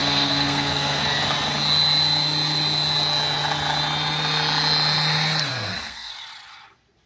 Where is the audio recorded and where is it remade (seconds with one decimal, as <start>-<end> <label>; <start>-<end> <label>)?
0.0-1.0 remade; 1.0-5.5 recorded; 5.5-6.1 remade; 6.1-7.1 recorded